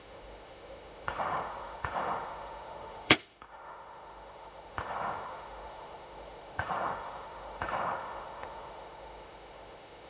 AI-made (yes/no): yes